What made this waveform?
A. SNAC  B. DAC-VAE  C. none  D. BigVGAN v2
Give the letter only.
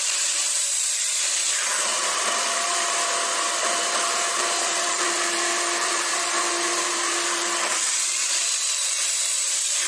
D